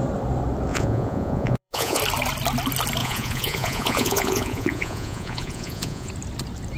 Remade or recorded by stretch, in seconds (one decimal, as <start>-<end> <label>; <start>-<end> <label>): 0.0-0.7 recorded; 0.7-2.0 remade; 2.0-3.0 recorded; 3.0-6.1 remade; 6.1-6.8 recorded